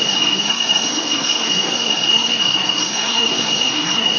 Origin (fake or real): fake